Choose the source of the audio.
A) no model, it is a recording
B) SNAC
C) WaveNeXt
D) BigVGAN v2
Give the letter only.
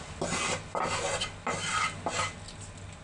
A